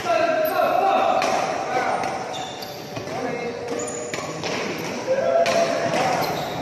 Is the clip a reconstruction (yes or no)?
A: no